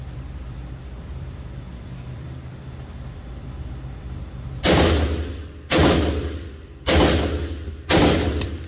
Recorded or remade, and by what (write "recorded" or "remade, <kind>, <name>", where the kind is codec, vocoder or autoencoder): remade, vocoder, BigVGAN v2